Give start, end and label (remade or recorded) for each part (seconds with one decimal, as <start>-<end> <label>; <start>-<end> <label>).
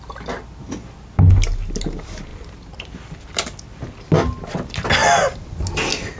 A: 0.0-6.2 recorded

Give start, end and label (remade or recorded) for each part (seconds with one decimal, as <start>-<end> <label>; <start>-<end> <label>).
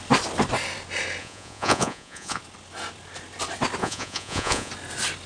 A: 0.0-1.2 recorded; 1.2-2.4 remade; 2.4-3.8 recorded; 3.8-4.7 remade; 4.7-5.3 recorded